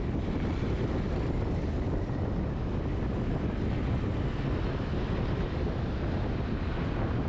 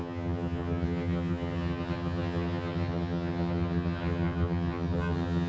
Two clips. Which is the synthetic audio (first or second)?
second